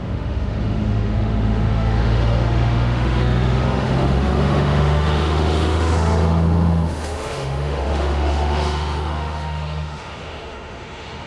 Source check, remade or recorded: remade